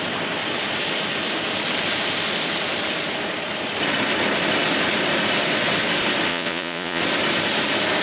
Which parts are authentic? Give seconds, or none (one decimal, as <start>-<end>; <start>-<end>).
0.0-6.3; 7.0-8.0